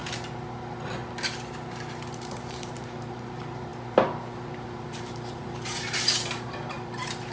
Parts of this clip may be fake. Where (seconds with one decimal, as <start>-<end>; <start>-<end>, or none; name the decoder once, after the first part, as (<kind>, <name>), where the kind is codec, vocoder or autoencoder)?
2.5-3.7 (vocoder, BigVGAN v2); 4.4-7.3

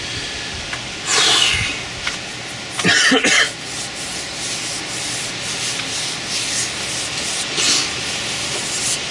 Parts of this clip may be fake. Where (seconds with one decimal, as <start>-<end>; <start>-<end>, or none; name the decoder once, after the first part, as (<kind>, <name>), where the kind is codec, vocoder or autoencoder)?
none

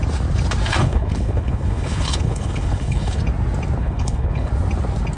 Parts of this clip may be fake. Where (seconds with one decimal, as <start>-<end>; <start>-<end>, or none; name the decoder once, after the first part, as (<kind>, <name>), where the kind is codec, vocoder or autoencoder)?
0.8-3.2 (codec, HILCodec); 3.8-4.5

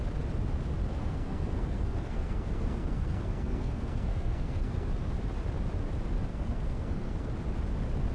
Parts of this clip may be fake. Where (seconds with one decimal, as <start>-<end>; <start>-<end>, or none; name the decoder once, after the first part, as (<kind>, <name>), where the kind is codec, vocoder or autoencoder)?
0.9-4.9 (codec, SNAC); 6.3-7.3

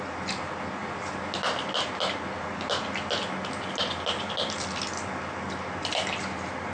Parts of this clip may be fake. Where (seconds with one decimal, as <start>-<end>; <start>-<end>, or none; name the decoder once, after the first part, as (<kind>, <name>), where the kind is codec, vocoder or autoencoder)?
none

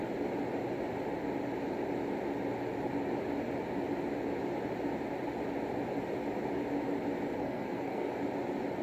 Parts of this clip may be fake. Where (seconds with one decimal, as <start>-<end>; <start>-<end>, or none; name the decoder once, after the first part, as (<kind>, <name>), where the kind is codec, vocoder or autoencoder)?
7.4-8.1 (codec, SNAC)